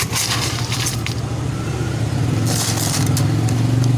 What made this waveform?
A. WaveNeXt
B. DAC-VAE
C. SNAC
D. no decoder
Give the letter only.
D